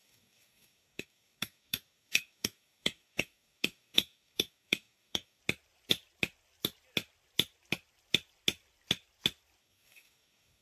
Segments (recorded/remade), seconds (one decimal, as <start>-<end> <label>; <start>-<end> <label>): 0.0-5.4 remade; 5.4-9.6 recorded; 9.6-10.6 remade